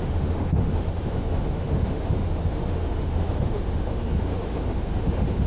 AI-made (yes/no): yes